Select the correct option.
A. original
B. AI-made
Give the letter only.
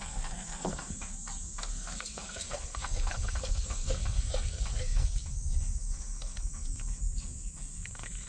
B